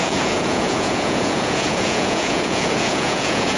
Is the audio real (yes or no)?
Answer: no